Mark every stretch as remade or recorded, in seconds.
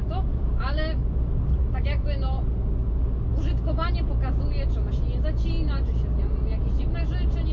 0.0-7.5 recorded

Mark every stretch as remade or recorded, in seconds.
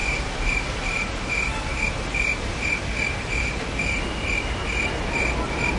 0.0-5.8 recorded